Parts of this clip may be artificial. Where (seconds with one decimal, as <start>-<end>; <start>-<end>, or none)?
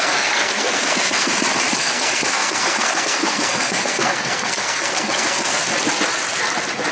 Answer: 0.0-1.3; 1.8-5.7